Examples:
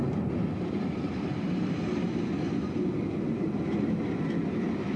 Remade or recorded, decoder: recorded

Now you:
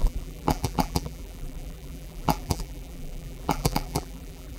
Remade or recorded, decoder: remade, vocoder, BigVGAN v2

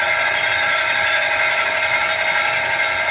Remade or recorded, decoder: recorded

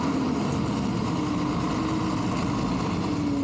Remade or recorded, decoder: recorded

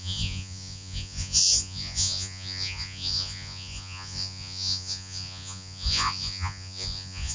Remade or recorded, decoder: remade, vocoder, Vocos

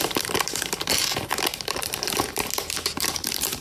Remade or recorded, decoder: remade, vocoder, BigVGAN v2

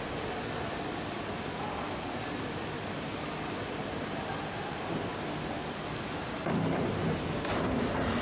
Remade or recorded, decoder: recorded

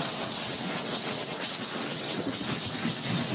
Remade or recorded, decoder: remade, vocoder, WaveNeXt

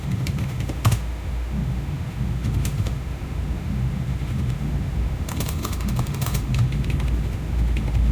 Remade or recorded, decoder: remade, autoencoder, DAC-VAE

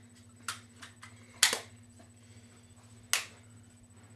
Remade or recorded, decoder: recorded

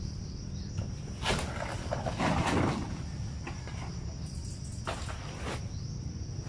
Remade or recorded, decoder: recorded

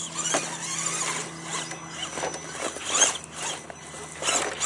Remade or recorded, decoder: recorded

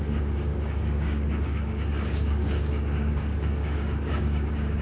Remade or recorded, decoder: remade, codec, DAC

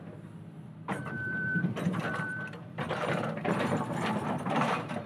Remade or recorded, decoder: remade, vocoder, BigVGAN v2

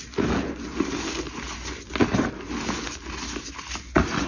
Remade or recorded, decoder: recorded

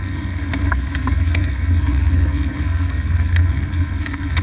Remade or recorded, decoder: remade, codec, SNAC